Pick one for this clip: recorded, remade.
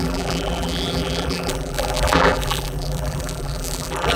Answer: remade